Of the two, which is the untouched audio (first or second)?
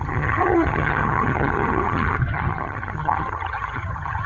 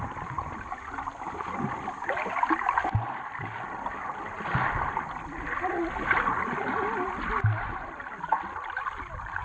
second